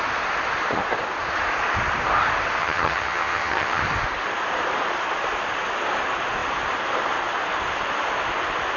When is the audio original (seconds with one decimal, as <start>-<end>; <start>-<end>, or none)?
0.0-2.6; 3.8-8.8